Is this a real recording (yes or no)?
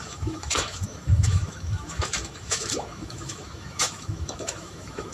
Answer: no